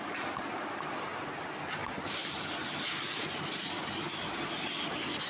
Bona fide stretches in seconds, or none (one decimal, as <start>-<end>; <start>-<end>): 0.0-5.3